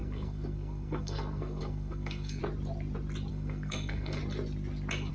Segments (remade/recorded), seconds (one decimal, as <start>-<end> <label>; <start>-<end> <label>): 0.0-2.4 remade; 2.4-3.3 recorded; 3.3-4.2 remade; 4.2-5.1 recorded